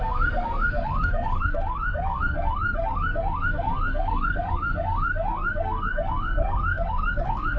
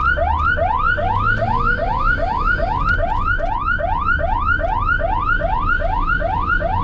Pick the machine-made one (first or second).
first